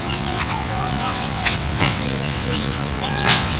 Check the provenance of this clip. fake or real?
fake